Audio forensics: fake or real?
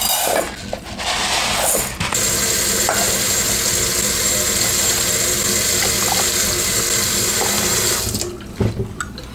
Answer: real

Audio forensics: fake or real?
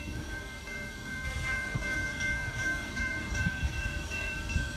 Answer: fake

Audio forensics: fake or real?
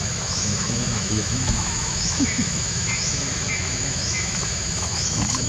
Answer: fake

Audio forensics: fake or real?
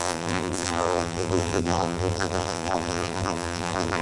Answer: fake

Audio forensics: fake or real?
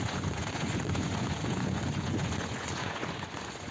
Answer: fake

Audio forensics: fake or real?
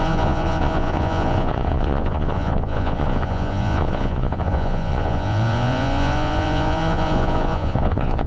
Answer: fake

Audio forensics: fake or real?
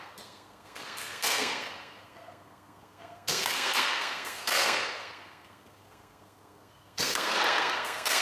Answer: fake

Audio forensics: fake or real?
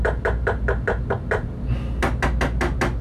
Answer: real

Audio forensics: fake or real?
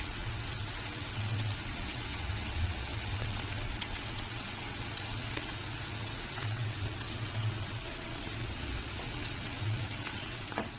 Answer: fake